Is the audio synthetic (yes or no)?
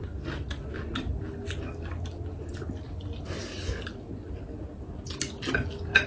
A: no